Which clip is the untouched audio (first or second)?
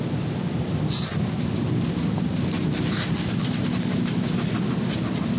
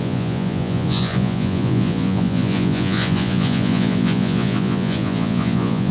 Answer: first